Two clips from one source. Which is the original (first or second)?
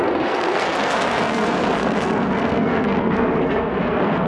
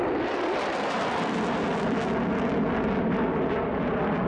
second